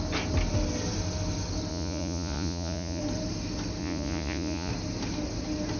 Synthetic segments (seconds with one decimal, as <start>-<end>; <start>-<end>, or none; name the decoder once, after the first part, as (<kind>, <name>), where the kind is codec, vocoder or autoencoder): 1.7-3.0 (vocoder, Vocos); 3.8-4.7